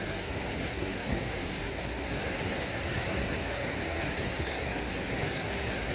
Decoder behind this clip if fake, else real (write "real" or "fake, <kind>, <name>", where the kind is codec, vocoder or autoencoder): fake, codec, SNAC